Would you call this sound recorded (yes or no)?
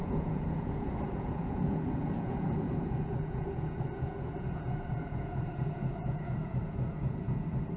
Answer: no